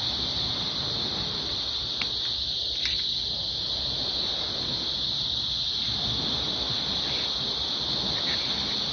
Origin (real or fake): real